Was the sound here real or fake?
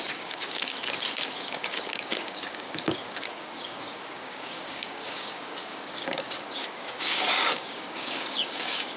fake